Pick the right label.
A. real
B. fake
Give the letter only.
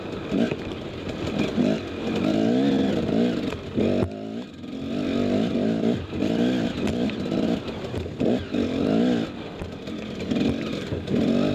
A